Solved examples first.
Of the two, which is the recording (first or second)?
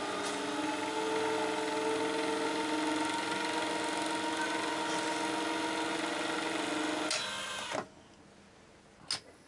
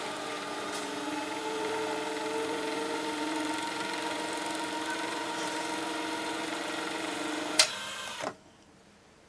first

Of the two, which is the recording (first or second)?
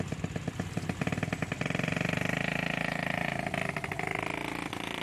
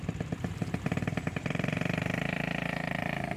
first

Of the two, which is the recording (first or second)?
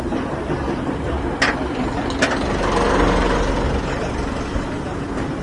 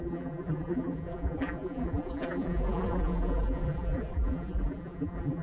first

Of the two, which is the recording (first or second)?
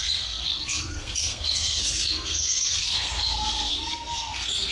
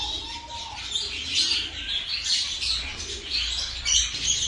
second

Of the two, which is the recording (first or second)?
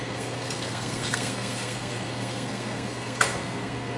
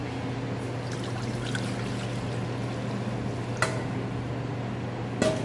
second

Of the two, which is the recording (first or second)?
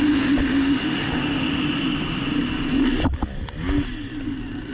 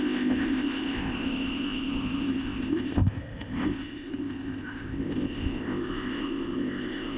first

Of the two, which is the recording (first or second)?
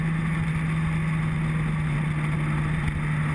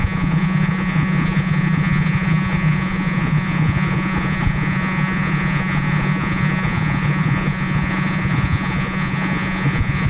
first